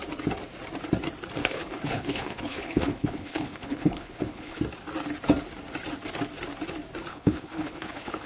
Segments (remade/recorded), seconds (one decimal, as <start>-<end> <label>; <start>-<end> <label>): 0.0-1.4 recorded; 1.4-4.6 remade; 4.6-7.1 recorded; 7.1-8.3 remade